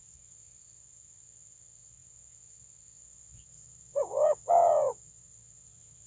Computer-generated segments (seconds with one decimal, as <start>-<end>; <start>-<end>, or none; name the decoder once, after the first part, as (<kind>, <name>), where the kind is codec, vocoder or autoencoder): 0.0-6.1 (vocoder, WaveNeXt)